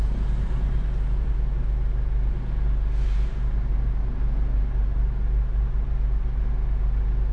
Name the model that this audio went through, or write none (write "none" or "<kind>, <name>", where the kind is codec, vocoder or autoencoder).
none